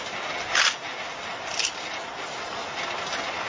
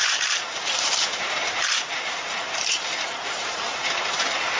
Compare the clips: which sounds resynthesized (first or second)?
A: second